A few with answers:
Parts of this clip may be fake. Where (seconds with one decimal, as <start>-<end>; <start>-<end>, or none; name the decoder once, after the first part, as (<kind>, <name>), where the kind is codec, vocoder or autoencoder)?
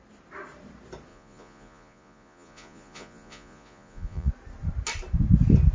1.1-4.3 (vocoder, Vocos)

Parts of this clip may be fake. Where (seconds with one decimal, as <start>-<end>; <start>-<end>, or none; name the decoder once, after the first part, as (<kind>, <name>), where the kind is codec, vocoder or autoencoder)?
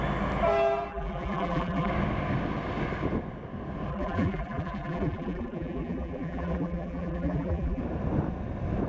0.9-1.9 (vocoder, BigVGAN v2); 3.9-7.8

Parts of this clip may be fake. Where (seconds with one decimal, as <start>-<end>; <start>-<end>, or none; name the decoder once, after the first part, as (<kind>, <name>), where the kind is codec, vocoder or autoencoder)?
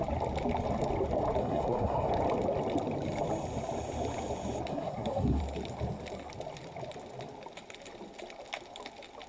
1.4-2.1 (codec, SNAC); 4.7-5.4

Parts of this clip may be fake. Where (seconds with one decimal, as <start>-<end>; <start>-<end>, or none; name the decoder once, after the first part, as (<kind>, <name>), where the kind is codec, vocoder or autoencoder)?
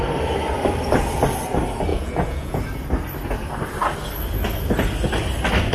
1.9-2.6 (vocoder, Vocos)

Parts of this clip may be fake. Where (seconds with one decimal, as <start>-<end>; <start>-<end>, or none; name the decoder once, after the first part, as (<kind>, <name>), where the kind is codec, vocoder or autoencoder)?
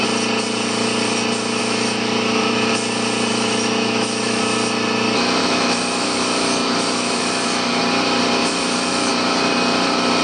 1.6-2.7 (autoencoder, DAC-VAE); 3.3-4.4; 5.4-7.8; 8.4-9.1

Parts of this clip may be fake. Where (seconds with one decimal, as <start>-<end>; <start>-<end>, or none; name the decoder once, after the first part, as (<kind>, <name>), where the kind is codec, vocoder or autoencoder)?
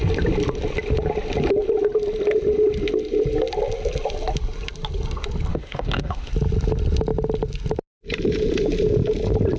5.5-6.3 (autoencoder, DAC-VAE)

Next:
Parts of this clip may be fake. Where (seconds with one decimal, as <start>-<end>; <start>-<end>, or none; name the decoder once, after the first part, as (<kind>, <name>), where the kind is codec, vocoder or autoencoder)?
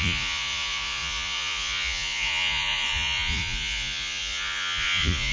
0.0-5.3 (vocoder, Vocos)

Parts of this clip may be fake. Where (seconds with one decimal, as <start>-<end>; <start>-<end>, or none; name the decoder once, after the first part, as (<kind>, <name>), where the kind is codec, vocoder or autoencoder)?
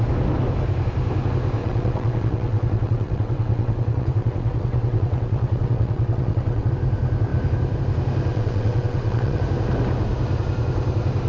1.6-6.7 (vocoder, WaveNeXt); 8.3-9.4